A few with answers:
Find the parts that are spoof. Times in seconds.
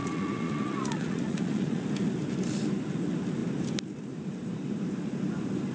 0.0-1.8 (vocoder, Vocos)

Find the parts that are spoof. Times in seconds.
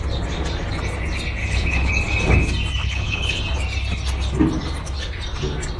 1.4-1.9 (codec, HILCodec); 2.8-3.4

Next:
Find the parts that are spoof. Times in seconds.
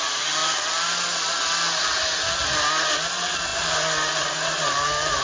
none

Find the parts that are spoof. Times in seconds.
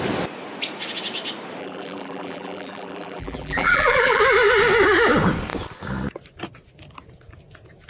1.6-4.2 (vocoder, BigVGAN v2)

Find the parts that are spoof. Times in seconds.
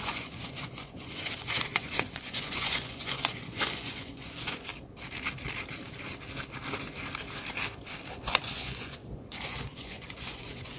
0.0-4.7 (vocoder, Vocos); 8.2-10.8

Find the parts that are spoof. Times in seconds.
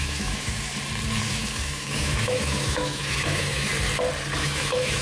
0.0-0.7 (autoencoder, DAC-VAE); 1.2-3.7; 4.4-5.0